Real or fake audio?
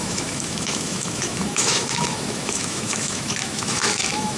fake